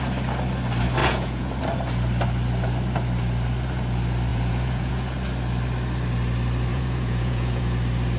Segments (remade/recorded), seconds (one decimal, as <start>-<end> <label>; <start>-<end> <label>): 0.0-1.0 recorded; 1.0-1.6 remade; 1.6-4.3 recorded; 4.3-4.9 remade; 4.9-6.7 recorded; 6.7-7.6 remade; 7.6-8.2 recorded